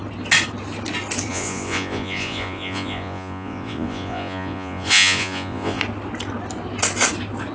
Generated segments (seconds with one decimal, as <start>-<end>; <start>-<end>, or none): 1.3-5.8